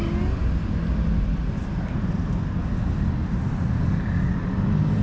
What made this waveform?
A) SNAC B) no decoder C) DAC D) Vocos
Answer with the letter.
B